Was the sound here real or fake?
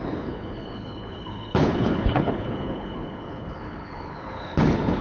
fake